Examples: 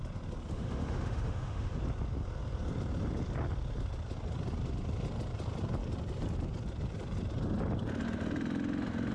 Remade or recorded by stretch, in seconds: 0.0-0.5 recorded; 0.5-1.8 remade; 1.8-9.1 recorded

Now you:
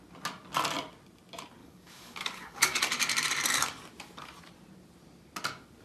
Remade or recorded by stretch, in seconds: 0.0-1.6 recorded; 1.6-2.8 remade; 2.8-5.8 recorded

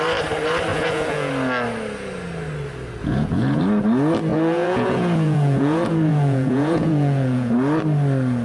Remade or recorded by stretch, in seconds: 0.0-0.7 recorded; 0.7-1.3 remade; 1.3-3.0 recorded; 3.0-3.6 remade; 3.6-4.3 recorded; 4.3-7.5 remade; 7.5-8.4 recorded

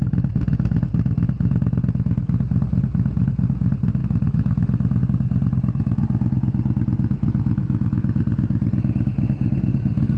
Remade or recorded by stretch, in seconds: 0.0-4.0 recorded; 4.0-5.0 remade; 5.0-7.6 recorded; 7.6-8.2 remade; 8.2-10.2 recorded

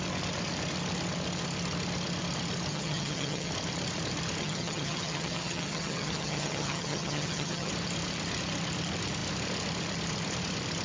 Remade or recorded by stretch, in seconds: 0.0-2.7 recorded; 2.7-3.5 remade; 3.5-4.4 recorded; 4.4-7.7 remade; 7.7-10.8 recorded